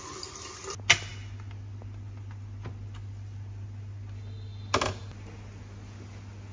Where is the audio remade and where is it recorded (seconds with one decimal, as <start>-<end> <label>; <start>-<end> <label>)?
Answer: 0.0-6.5 recorded